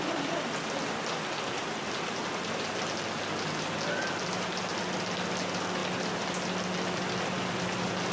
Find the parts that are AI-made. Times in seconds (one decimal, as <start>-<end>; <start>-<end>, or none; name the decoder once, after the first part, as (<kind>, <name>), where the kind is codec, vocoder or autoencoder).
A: none